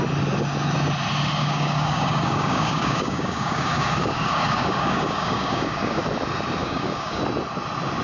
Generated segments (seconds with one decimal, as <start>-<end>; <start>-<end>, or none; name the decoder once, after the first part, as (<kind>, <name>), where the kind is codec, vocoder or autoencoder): 1.4-6.0 (codec, DAC); 6.6-7.2